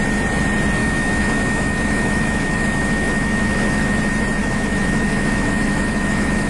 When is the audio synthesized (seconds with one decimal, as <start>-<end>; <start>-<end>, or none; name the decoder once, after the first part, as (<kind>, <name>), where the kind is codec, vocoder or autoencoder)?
0.8-4.0 (autoencoder, DAC-VAE); 4.4-6.5